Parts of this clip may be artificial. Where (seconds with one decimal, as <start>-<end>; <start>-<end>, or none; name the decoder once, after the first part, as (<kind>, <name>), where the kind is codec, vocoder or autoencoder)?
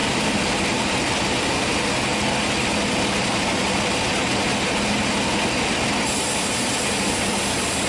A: none